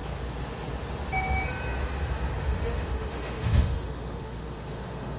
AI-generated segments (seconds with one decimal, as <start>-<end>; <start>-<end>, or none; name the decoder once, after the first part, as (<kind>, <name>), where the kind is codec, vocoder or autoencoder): 2.4-5.2 (autoencoder, DAC-VAE)